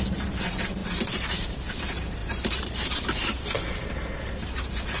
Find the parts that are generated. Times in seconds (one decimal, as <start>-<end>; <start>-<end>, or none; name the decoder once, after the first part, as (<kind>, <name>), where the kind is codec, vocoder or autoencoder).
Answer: 0.0-5.0 (vocoder, BigVGAN v2)